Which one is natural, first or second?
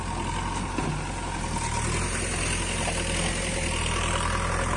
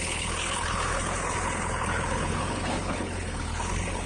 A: first